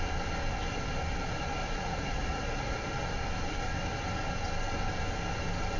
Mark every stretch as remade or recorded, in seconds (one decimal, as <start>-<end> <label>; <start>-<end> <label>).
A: 0.0-1.6 recorded; 1.6-2.9 remade; 2.9-5.8 recorded